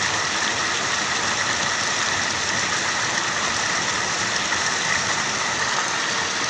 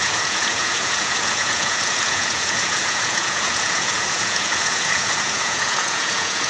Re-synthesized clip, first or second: second